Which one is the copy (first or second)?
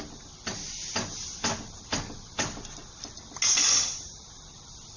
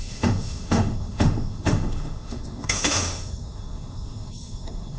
second